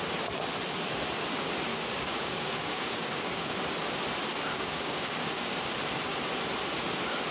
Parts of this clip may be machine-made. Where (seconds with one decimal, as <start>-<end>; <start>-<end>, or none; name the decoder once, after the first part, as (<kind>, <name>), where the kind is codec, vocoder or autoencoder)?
1.7-3.6 (codec, DAC); 4.3-5.5

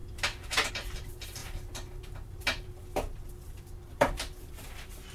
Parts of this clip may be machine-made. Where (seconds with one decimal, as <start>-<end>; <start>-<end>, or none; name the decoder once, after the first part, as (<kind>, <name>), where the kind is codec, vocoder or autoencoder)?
0.0-5.1 (vocoder, BigVGAN v2)